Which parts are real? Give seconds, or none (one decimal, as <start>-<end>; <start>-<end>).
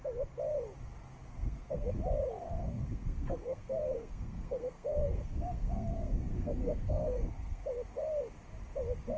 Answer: 0.0-1.3; 1.9-2.4; 7.6-9.2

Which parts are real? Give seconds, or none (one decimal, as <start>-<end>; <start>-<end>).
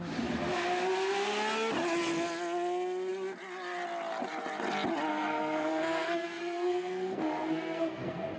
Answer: 0.0-5.1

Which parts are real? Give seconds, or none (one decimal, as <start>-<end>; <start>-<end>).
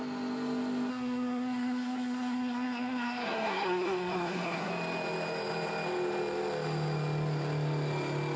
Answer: 0.0-0.9; 4.7-8.4